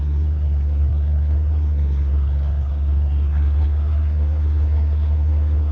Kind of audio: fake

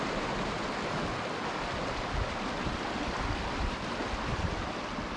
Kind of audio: real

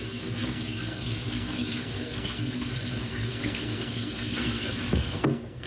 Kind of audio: fake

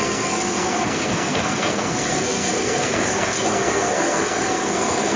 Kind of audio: fake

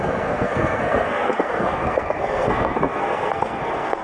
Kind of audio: fake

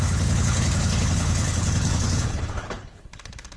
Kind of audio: fake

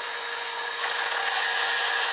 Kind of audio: fake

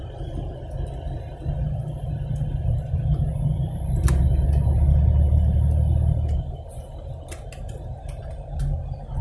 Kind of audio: real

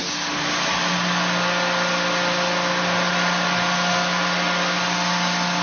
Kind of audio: real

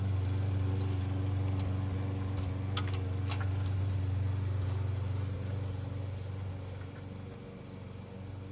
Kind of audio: real